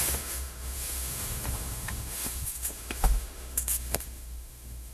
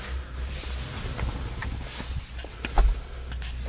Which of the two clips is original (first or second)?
second